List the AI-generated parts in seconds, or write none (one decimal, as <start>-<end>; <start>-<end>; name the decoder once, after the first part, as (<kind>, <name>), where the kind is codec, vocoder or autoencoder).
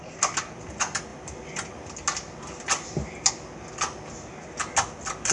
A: none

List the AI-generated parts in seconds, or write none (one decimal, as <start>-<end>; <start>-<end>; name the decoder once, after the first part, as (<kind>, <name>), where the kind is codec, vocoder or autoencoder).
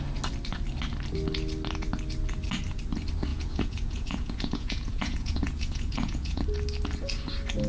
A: 3.3-6.4 (vocoder, Vocos)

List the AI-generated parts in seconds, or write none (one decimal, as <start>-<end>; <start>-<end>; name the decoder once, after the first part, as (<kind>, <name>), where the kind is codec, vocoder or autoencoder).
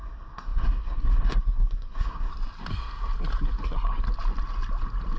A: 0.0-2.3 (codec, SNAC)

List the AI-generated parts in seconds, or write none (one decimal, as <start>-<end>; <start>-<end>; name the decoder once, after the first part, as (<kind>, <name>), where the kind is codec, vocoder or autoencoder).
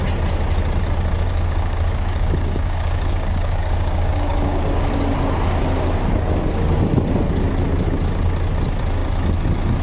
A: 1.3-4.9 (codec, DAC)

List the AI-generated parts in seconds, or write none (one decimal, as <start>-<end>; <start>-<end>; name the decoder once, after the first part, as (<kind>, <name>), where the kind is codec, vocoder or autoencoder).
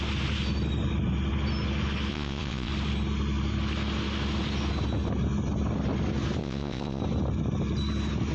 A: 2.1-2.7 (vocoder, Vocos); 6.4-7.0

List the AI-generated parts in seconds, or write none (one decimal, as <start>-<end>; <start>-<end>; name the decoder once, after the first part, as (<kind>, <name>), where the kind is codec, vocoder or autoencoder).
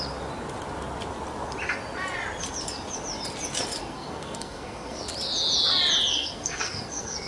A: 3.8-5.0 (codec, SNAC); 6.1-7.3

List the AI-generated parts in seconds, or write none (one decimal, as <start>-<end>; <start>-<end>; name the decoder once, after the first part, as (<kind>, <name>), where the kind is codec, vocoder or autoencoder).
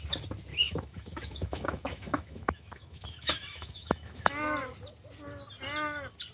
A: 0.5-4.3 (autoencoder, DAC-VAE)